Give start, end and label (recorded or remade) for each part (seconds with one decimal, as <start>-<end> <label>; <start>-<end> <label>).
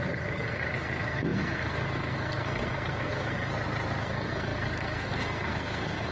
0.0-3.5 remade; 3.5-4.0 recorded; 4.0-6.1 remade